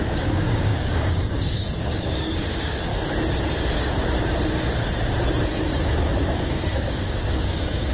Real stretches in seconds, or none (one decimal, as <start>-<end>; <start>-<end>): 2.9-6.0